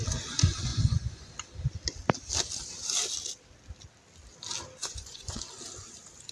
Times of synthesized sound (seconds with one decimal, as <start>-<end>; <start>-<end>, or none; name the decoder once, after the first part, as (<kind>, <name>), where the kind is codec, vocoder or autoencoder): 0.7-1.3 (vocoder, Vocos); 4.8-5.4